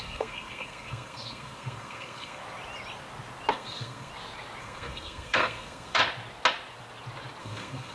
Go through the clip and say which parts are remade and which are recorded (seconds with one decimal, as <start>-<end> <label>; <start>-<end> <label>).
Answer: 0.0-2.4 remade; 2.4-3.5 recorded; 3.5-4.1 remade; 4.1-4.6 recorded; 4.6-6.0 remade; 6.0-7.4 recorded; 7.4-7.9 remade